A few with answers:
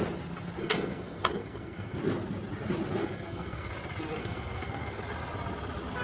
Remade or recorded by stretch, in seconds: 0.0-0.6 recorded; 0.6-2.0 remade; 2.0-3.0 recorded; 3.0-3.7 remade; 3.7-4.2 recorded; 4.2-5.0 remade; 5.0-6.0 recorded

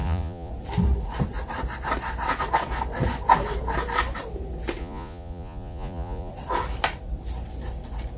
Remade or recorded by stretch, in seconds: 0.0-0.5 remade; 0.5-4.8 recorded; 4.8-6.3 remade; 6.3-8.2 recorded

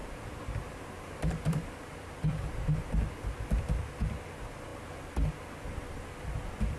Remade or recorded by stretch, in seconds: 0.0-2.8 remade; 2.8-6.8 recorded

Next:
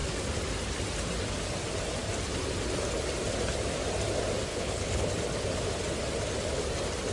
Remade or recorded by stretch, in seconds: 0.0-4.5 recorded; 4.5-5.1 remade; 5.1-7.1 recorded